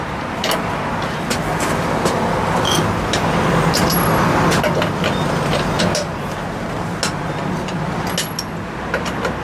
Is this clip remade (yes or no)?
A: no